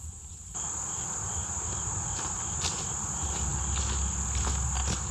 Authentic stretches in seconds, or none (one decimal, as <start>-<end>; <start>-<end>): 0.0-5.1